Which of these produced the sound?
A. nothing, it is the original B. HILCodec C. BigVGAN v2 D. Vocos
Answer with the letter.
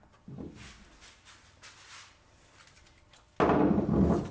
A